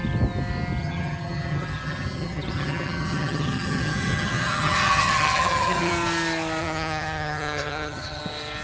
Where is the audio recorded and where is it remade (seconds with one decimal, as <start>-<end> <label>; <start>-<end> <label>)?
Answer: 0.0-0.8 recorded; 0.8-5.9 remade; 5.9-6.6 recorded; 6.6-8.2 remade; 8.2-8.6 recorded